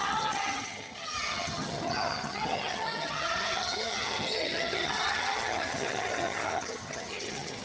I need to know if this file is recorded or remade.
remade